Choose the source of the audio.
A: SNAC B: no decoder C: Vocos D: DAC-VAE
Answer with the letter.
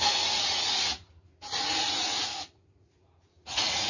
C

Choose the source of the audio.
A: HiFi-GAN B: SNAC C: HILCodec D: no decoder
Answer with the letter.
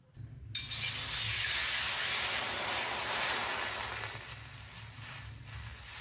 D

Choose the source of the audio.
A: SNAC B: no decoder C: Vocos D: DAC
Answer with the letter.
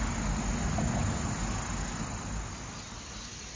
B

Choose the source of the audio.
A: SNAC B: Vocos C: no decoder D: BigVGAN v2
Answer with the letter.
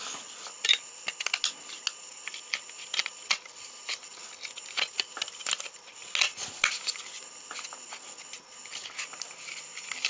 C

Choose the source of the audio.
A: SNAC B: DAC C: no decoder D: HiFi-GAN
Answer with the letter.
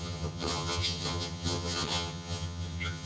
D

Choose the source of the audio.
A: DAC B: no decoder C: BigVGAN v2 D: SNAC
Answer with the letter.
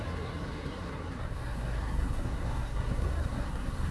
D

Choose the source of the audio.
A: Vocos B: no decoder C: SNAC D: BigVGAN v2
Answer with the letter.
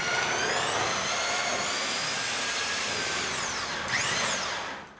B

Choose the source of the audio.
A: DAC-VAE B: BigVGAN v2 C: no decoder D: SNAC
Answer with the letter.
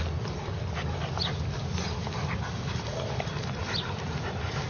B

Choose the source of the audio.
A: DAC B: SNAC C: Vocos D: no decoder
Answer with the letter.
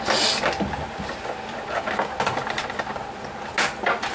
D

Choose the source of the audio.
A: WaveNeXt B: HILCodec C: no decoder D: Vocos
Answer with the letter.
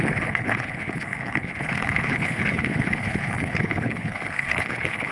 B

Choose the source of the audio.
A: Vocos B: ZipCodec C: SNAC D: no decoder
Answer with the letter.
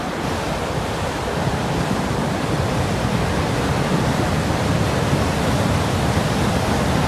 D